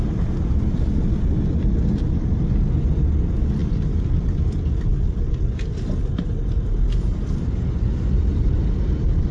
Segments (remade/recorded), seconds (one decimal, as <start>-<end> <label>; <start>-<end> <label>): 0.0-9.3 recorded